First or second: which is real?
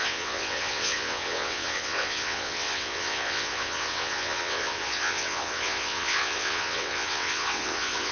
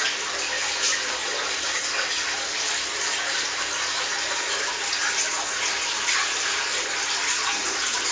second